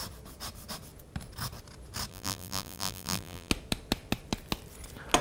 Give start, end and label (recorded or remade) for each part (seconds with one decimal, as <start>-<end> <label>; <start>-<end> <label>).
0.0-2.1 recorded; 2.1-3.5 remade; 3.5-5.2 recorded